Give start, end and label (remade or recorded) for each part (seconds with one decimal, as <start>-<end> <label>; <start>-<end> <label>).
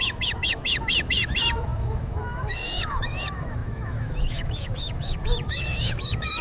0.0-6.4 remade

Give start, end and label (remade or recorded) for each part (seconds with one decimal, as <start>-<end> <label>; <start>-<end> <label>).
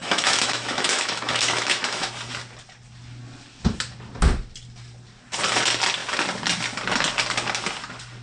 0.0-2.1 remade; 2.1-8.2 recorded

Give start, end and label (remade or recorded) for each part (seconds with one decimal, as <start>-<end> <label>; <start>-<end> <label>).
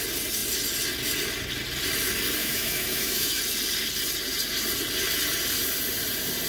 0.0-2.4 recorded; 2.4-3.4 remade; 3.4-6.5 recorded